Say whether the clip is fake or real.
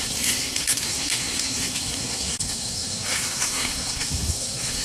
fake